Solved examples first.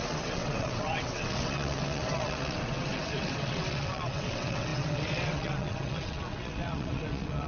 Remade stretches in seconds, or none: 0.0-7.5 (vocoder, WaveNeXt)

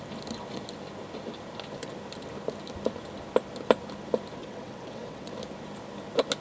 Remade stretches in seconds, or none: 4.4-5.3 (vocoder, WaveNeXt)